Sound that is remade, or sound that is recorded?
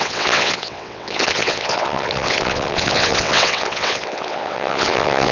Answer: remade